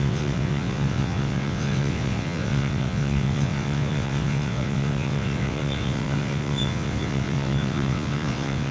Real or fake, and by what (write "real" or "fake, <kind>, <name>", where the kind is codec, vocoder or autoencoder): fake, vocoder, WaveNeXt